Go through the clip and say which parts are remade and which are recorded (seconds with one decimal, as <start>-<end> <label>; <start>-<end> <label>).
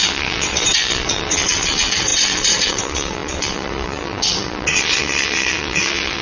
0.0-6.2 remade